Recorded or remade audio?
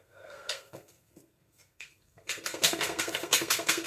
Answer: remade